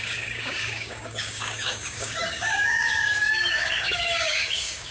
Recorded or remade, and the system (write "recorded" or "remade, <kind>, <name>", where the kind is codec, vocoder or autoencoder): remade, codec, DAC